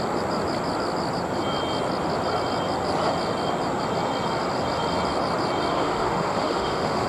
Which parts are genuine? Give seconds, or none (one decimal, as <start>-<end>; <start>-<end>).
0.0-5.7